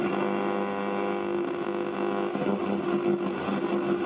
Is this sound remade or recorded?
recorded